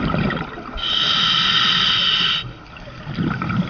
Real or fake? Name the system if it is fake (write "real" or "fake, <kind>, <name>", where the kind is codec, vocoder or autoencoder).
fake, vocoder, BigVGAN v2